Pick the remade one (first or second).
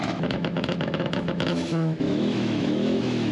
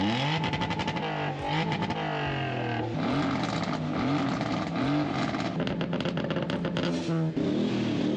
first